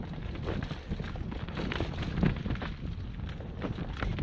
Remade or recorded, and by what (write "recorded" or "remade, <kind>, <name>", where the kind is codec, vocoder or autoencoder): recorded